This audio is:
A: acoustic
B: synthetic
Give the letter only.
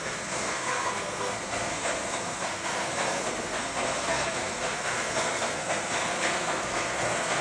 B